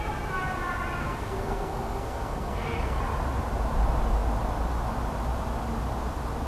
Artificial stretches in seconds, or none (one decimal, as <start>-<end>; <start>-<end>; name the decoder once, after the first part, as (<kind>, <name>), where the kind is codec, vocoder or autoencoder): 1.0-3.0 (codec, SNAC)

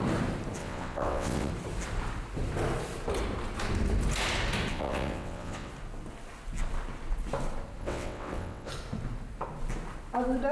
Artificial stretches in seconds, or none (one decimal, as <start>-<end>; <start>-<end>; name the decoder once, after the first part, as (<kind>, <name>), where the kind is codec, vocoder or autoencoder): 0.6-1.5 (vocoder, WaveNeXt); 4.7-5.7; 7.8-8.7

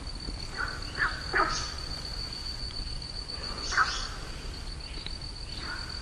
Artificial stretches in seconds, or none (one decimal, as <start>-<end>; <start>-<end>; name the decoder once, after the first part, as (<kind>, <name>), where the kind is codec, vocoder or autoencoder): 1.3-3.9 (vocoder, Vocos)

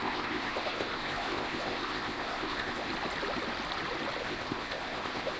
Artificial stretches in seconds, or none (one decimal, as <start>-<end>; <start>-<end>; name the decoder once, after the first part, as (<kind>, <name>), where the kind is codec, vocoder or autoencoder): 0.0-2.9 (codec, ZipCodec); 4.2-5.4

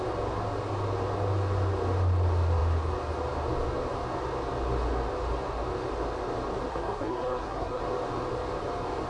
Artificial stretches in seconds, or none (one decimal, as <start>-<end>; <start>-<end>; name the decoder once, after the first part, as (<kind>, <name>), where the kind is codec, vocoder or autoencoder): 6.7-7.8 (codec, SNAC)

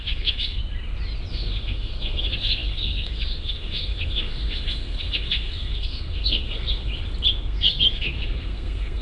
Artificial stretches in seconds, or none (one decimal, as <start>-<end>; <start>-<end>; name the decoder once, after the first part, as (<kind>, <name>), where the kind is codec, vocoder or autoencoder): 0.0-0.6 (codec, SNAC); 1.3-6.9; 7.4-9.0

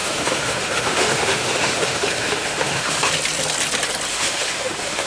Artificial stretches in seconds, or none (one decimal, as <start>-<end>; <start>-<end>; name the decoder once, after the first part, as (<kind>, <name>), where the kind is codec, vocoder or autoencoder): 0.0-3.1 (autoencoder, DAC-VAE); 4.1-5.1